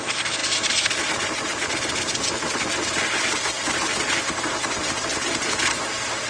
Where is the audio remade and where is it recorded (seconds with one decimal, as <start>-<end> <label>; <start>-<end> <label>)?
0.0-6.3 recorded